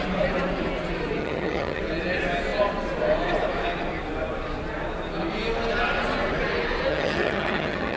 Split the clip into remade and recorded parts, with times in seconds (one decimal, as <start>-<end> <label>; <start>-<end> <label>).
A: 0.0-1.2 recorded; 1.2-1.8 remade; 1.8-6.9 recorded; 6.9-8.0 remade